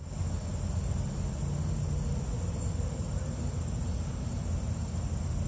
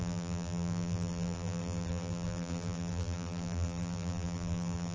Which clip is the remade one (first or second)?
second